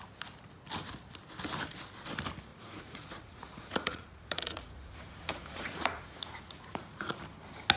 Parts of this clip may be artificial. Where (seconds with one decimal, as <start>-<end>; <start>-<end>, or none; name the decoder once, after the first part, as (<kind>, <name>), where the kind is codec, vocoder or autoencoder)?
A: 2.5-7.2 (vocoder, Vocos)